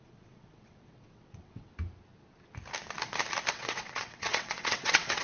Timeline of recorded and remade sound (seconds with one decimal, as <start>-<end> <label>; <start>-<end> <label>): 0.0-1.7 remade; 1.7-3.5 recorded; 3.5-5.2 remade